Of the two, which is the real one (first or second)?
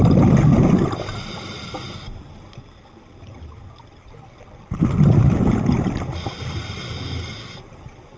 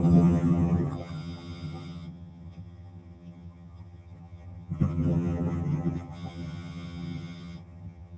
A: first